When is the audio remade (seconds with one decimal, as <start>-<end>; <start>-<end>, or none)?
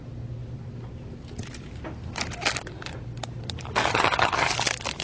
3.9-4.5